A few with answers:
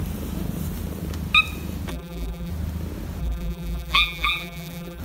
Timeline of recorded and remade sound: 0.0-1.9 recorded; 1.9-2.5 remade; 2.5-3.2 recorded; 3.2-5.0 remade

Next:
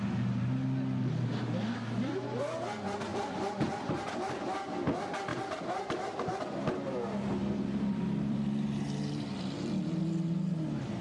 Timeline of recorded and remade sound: 0.0-3.1 recorded; 3.1-3.6 remade; 3.6-5.3 recorded; 5.3-6.4 remade; 6.4-7.4 recorded; 7.4-10.3 remade; 10.3-11.0 recorded

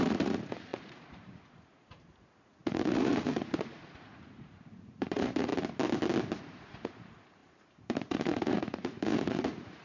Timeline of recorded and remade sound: 0.0-5.5 remade; 5.5-6.4 recorded; 6.4-9.8 remade

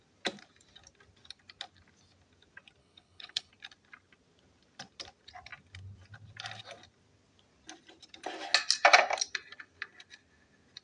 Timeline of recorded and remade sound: 0.0-2.8 recorded; 2.8-3.5 remade; 3.5-10.8 recorded

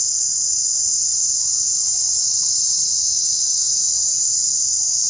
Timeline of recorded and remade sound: 0.0-5.1 recorded